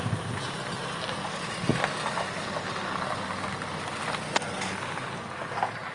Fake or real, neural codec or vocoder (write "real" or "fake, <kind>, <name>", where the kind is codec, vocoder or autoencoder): real